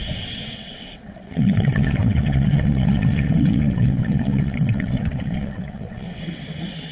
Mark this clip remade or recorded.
remade